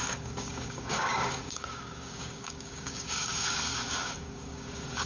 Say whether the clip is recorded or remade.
remade